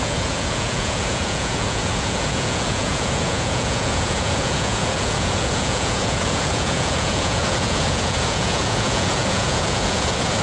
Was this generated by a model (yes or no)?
yes